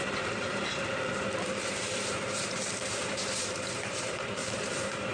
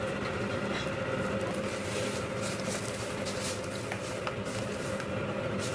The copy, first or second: first